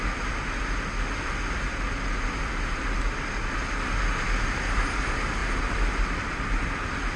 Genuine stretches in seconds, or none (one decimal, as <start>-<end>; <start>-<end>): 0.0-7.2